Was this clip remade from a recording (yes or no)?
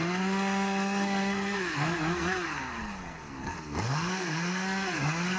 yes